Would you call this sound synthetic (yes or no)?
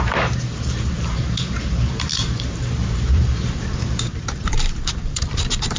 yes